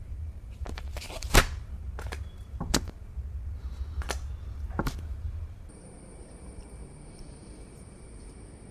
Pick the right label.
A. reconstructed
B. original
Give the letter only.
A